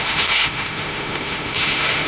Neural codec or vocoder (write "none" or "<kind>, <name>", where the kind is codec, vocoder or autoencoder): autoencoder, DAC-VAE